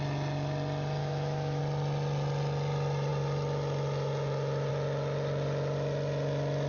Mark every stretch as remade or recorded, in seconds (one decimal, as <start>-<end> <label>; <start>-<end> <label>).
0.0-1.0 recorded; 1.0-1.6 remade; 1.6-6.7 recorded